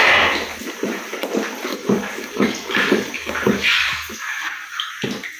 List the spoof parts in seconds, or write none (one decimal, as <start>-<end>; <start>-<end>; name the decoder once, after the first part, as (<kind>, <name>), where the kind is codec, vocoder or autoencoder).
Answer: 1.7-4.9 (codec, DAC)